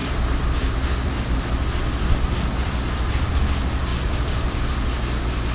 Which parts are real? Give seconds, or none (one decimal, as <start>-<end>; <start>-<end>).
3.3-3.9; 4.7-5.5